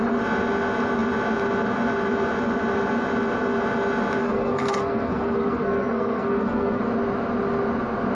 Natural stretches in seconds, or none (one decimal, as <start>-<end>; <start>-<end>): 0.0-4.2; 6.8-8.1